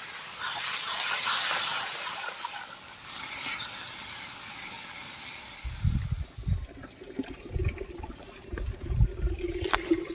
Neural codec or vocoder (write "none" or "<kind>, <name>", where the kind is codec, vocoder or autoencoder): none